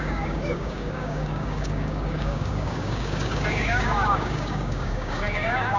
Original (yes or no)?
no